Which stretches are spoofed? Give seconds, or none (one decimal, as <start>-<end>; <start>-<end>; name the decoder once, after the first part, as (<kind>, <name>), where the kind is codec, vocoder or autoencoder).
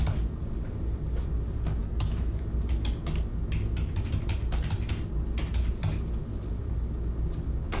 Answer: 1.8-2.4 (autoencoder, DAC-VAE)